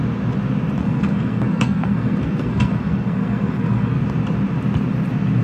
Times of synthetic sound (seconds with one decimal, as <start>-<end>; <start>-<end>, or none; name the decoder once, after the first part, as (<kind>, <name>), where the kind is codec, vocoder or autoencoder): 0.8-4.0 (codec, SNAC)